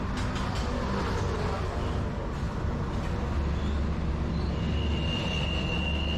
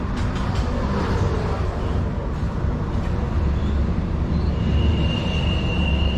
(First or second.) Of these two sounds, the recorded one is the first